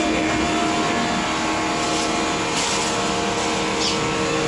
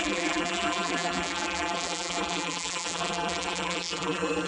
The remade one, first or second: second